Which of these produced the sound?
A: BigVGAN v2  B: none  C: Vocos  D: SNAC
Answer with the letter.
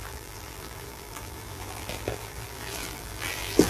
A